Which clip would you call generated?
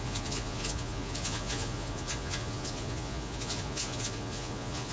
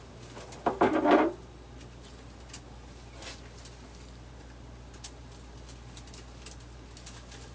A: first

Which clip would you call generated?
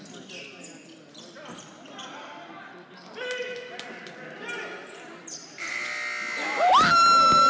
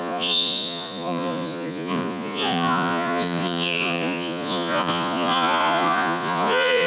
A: second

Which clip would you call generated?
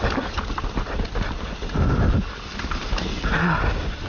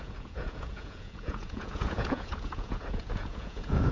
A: second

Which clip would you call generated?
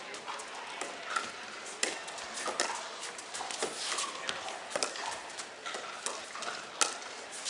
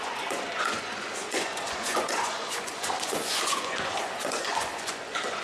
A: second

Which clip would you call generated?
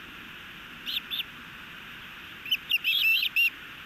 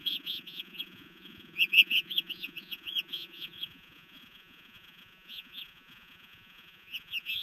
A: second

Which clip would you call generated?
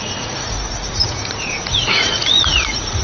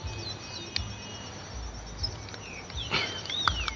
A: first